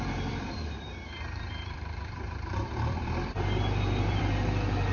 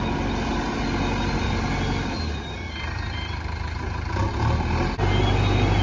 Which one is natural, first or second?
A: second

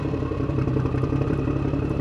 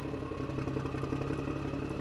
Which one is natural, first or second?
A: second